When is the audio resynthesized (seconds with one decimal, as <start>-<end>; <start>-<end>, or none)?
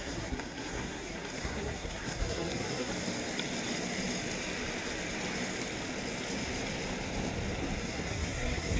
0.0-2.9; 7.8-8.8